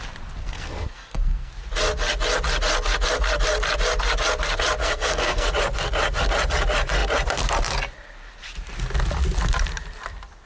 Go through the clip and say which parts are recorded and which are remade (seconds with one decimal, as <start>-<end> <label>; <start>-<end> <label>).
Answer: 0.0-0.4 recorded; 0.4-1.5 remade; 1.5-4.8 recorded; 4.8-5.5 remade; 5.5-10.5 recorded